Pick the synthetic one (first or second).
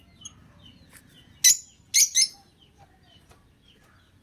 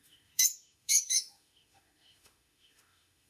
second